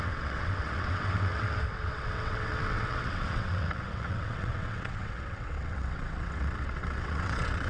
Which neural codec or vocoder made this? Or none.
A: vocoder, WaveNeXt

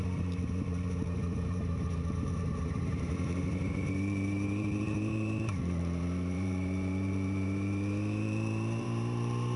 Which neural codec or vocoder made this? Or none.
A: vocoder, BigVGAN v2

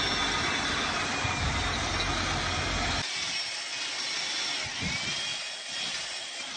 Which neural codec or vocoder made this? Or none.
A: none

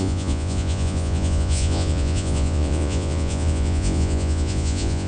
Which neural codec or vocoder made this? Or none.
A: vocoder, Vocos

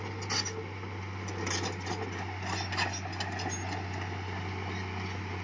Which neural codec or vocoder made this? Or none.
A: none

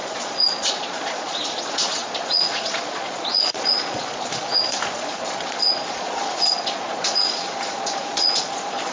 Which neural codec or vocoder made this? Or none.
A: vocoder, Vocos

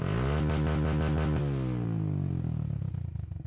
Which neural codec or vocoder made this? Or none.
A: none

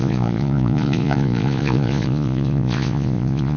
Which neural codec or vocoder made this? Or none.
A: vocoder, Vocos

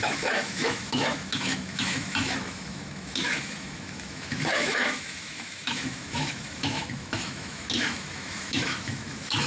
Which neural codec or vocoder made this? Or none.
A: autoencoder, DAC-VAE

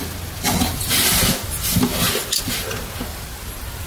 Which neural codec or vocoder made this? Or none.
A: none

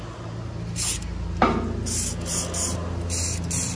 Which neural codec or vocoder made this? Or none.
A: none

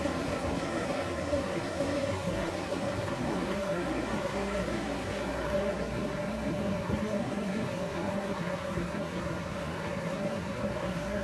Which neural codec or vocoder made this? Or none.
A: codec, SNAC